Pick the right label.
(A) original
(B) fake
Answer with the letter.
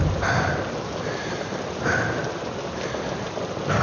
A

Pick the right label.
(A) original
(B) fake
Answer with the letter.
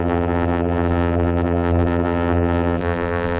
B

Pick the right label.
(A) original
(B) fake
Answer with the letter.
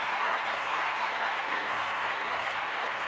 B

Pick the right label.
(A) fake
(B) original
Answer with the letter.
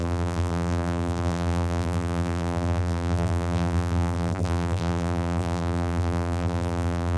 A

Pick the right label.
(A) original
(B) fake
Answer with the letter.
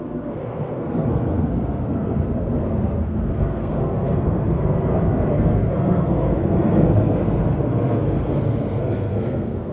B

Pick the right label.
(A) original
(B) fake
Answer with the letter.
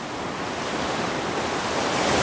A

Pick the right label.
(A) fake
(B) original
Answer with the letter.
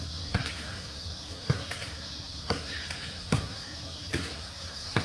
A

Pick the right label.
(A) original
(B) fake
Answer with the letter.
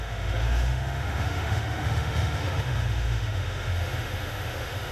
B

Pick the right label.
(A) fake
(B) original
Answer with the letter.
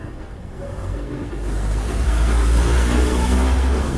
A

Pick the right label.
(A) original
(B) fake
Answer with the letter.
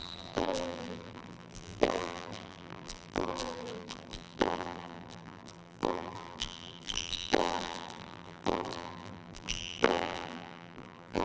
B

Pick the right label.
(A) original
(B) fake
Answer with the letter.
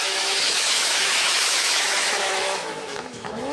B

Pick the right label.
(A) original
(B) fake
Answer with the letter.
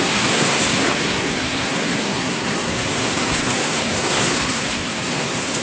B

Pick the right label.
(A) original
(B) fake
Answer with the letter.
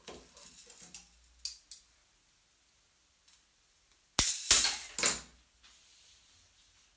A